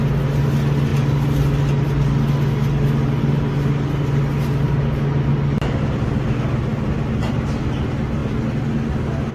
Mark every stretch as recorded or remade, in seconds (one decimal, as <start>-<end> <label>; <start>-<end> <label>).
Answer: 0.0-9.3 recorded